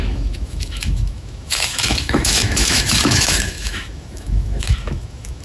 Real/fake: fake